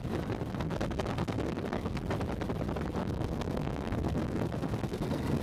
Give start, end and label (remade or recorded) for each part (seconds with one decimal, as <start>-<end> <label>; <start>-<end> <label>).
0.0-0.5 recorded; 0.5-2.0 remade; 2.0-3.0 recorded; 3.0-5.4 remade